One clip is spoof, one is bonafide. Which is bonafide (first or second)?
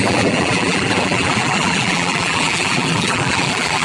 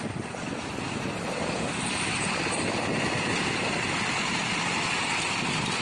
second